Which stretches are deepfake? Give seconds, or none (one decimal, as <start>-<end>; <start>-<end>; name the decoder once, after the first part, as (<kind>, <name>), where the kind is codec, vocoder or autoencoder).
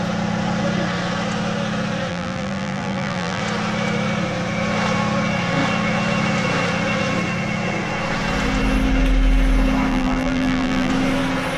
2.1-3.4 (vocoder, BigVGAN v2); 9.9-10.9